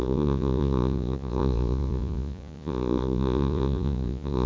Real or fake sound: fake